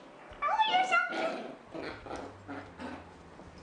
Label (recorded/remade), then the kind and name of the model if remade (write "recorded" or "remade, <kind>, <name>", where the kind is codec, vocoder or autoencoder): recorded